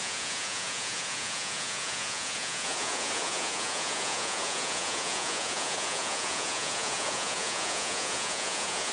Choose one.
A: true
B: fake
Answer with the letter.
B